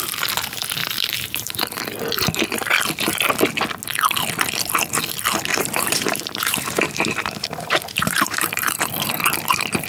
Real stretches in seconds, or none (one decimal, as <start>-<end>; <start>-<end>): 0.0-0.8; 1.8-5.5; 8.8-9.9